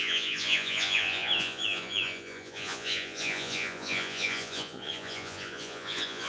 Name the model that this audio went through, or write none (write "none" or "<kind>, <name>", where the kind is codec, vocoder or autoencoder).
vocoder, Vocos